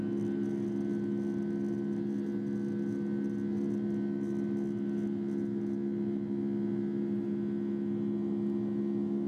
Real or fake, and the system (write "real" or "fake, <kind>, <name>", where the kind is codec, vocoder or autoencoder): real